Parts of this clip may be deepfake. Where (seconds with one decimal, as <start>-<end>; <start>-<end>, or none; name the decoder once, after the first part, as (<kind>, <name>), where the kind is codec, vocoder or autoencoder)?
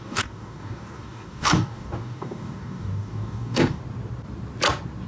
0.0-3.8 (codec, DAC)